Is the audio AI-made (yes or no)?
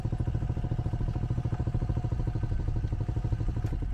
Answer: no